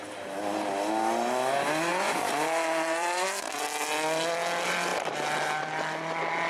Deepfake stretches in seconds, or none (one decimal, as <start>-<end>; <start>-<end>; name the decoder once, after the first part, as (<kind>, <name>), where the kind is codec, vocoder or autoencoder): 1.9-3.6 (vocoder, BigVGAN v2); 4.9-6.5